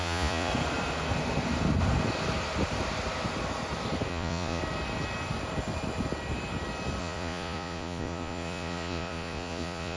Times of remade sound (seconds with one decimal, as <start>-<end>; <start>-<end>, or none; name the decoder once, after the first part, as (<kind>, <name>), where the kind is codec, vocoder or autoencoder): 0.0-0.5 (vocoder, Vocos); 4.1-4.6; 7.0-10.0